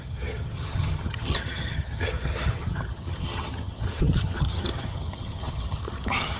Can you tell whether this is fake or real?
fake